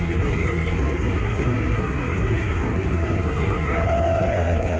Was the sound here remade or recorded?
remade